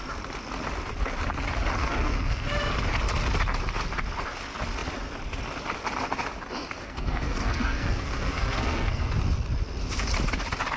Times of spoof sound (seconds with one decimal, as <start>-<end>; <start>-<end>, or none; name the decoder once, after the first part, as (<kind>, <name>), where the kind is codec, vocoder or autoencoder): 1.8-2.4 (codec, SNAC); 6.8-9.1